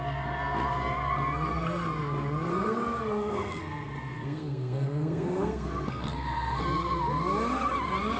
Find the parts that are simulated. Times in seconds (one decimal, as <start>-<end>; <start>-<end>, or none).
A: 2.5-6.6